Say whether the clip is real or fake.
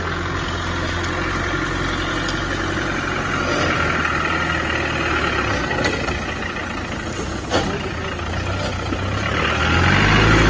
real